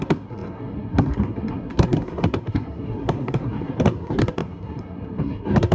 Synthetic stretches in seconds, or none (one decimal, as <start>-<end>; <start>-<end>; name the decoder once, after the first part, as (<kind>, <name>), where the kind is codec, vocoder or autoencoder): 0.0-5.7 (codec, SNAC)